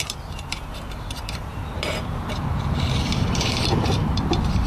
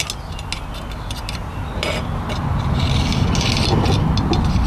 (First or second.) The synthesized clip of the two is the first